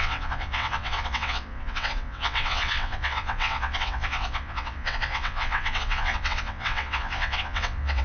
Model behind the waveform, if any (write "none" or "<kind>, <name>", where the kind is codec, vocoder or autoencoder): vocoder, WaveNeXt